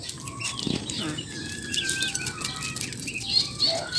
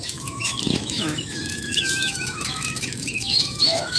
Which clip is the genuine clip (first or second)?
first